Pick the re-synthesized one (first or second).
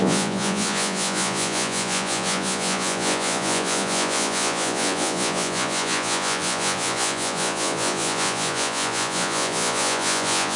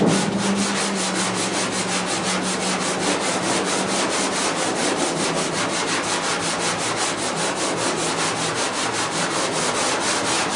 first